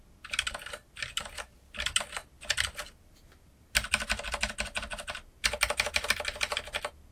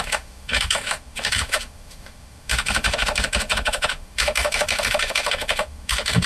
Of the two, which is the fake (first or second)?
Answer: second